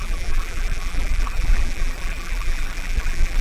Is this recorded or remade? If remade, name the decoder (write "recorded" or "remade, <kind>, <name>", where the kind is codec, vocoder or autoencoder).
remade, vocoder, BigVGAN v2